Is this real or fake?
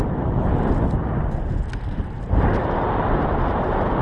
real